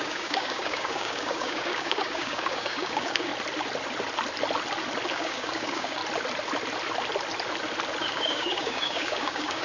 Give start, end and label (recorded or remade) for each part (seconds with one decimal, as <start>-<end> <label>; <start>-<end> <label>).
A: 0.0-3.3 remade; 3.3-5.1 recorded; 5.1-6.0 remade; 6.0-8.0 recorded; 8.0-9.6 remade